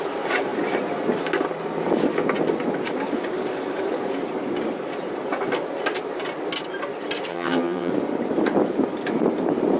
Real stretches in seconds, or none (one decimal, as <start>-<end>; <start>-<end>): 0.0-7.3; 7.9-9.8

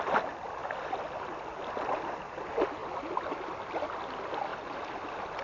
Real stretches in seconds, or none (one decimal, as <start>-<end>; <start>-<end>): 0.0-5.4

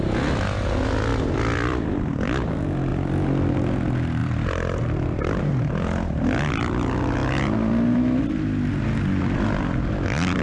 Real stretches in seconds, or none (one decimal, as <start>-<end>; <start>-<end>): 0.0-1.1; 2.0-2.9; 3.5-4.2; 5.4-10.4

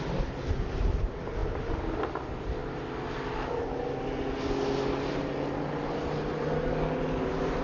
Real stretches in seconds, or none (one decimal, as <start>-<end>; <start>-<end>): 0.0-7.6

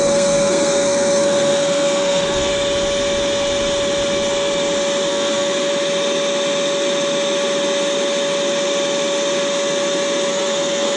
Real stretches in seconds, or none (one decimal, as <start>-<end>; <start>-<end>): 2.5-5.1; 5.7-10.3

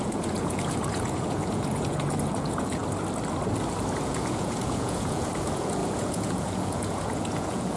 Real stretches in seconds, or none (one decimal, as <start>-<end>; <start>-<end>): 2.8-4.0

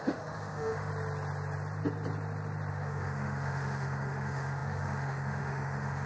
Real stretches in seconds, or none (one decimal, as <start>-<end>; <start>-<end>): 0.9-2.7